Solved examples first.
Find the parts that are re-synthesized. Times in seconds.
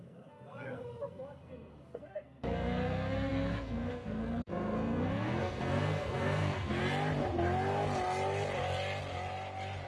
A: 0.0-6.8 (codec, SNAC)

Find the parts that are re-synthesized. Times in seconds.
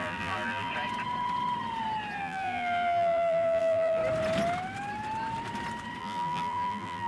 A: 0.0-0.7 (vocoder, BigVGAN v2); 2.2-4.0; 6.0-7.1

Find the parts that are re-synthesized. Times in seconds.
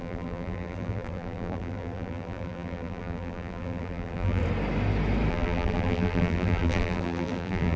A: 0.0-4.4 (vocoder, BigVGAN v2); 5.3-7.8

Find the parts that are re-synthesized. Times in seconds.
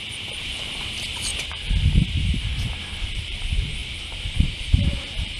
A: 0.0-1.3 (vocoder, BigVGAN v2); 2.0-2.5; 3.0-5.4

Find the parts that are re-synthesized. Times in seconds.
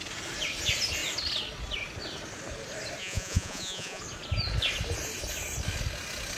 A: 3.0-4.0 (vocoder, Vocos)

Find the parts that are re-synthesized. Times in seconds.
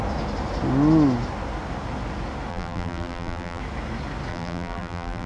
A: 2.5-3.6 (vocoder, BigVGAN v2); 4.3-5.3